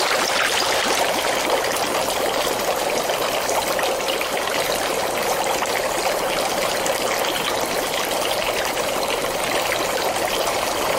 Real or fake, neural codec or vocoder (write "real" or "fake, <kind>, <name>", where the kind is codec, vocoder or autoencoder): real